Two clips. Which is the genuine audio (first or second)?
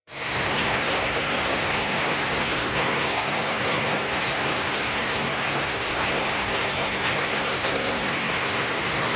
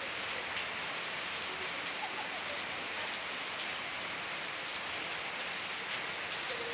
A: second